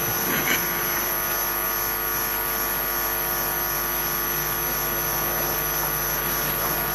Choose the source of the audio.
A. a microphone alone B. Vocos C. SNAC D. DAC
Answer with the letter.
A